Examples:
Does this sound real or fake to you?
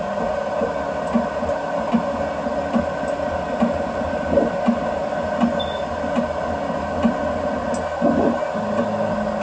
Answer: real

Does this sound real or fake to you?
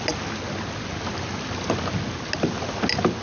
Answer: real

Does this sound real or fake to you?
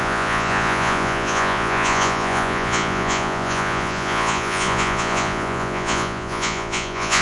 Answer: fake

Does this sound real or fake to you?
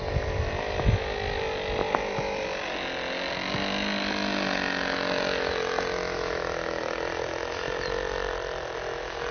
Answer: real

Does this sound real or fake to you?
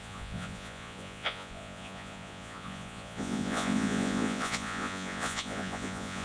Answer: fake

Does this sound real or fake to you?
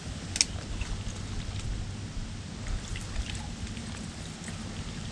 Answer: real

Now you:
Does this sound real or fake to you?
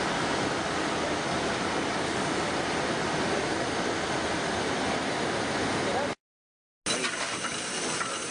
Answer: real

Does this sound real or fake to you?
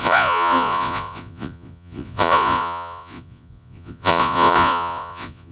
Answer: fake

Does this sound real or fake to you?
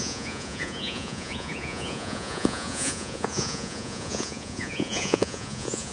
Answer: fake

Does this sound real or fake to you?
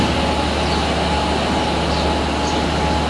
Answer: real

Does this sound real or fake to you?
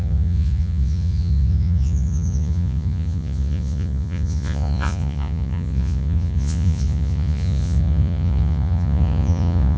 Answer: fake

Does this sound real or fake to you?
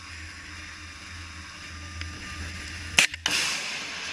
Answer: real